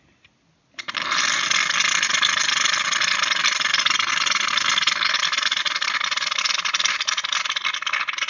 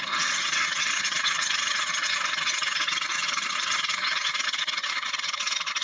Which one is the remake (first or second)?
second